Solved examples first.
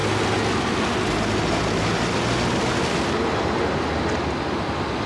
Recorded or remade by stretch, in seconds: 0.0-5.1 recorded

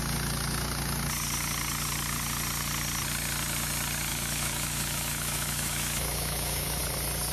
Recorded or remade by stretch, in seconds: 0.0-4.1 recorded; 4.1-6.8 remade; 6.8-7.3 recorded

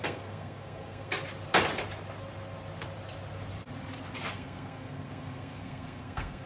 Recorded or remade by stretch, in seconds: 0.0-1.1 remade; 1.1-4.3 recorded; 4.3-6.5 remade

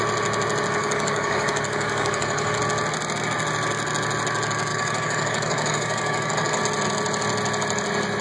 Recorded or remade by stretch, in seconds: 0.0-0.8 recorded; 0.8-2.6 remade; 2.6-4.7 recorded; 4.7-6.6 remade; 6.6-8.2 recorded

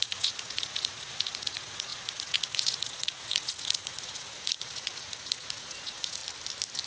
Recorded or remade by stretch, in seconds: 0.0-6.2 remade; 6.2-6.9 recorded